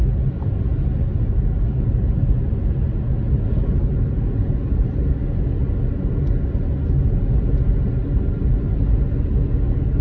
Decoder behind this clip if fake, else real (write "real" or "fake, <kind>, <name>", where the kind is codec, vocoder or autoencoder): real